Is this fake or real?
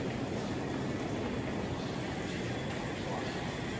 real